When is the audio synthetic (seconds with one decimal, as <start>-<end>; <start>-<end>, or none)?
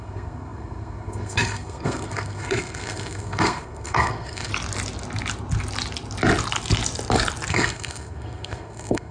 0.0-4.5; 7.5-9.1